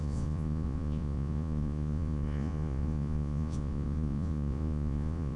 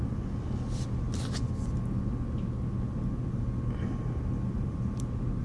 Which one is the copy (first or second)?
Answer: first